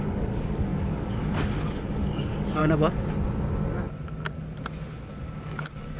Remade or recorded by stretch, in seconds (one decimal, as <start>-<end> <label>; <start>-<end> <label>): 0.0-2.6 remade; 2.6-5.1 recorded; 5.1-6.0 remade